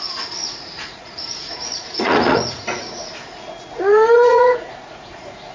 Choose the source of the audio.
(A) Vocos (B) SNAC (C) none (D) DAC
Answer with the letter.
A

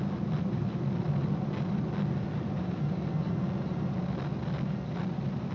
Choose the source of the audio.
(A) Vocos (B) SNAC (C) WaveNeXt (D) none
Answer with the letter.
D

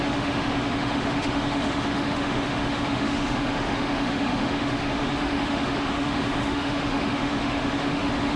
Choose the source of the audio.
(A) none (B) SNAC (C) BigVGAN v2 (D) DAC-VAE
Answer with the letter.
D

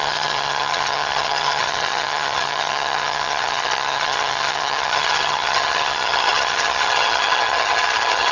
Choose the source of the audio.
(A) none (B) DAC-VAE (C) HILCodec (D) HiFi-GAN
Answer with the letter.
D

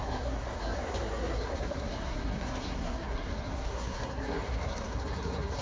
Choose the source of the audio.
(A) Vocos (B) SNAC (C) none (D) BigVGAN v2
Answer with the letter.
B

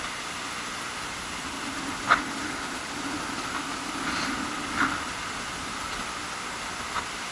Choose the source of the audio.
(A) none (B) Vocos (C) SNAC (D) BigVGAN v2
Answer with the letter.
A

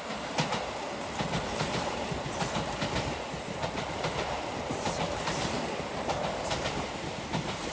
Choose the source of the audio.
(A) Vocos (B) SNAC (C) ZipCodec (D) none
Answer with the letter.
D